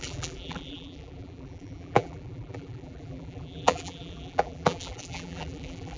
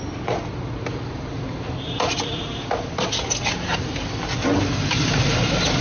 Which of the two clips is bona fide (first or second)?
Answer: second